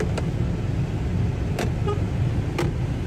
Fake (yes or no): no